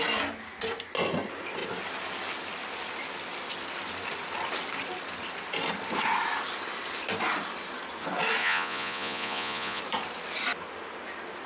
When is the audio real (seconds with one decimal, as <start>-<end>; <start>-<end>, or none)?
0.0-8.4; 9.8-11.5